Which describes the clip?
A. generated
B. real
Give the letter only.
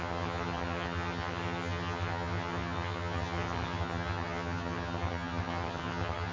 A